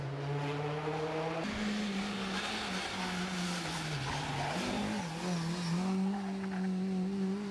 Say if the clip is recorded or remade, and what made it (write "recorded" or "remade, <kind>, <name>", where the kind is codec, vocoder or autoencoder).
recorded